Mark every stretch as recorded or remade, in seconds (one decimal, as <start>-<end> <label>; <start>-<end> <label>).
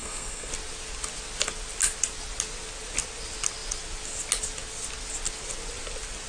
0.0-0.5 remade; 0.5-6.3 recorded